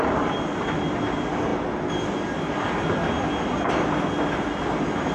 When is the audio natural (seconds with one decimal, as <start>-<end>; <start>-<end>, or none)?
0.0-5.1